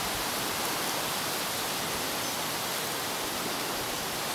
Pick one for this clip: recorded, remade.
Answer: recorded